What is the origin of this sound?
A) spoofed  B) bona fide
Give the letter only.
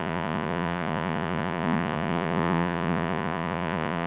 A